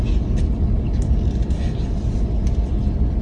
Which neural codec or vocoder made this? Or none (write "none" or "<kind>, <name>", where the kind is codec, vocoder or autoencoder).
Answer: none